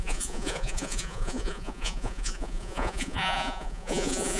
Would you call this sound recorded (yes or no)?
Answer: no